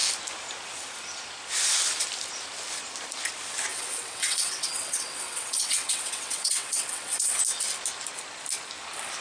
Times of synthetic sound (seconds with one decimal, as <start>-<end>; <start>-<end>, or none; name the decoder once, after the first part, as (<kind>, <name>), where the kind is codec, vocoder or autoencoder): 3.7-7.4 (vocoder, WaveNeXt)